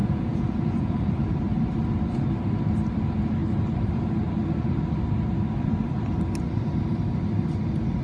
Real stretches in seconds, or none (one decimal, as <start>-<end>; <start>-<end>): 1.3-8.0